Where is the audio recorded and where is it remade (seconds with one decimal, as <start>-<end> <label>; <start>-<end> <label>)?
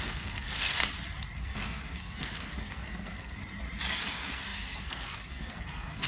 0.0-0.8 remade; 0.8-1.4 recorded; 1.4-3.4 remade; 3.4-3.9 recorded; 3.9-6.1 remade